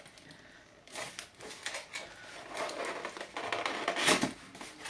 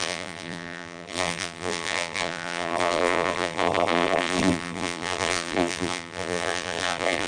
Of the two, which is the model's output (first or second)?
second